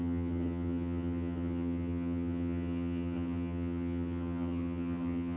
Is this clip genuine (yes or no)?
no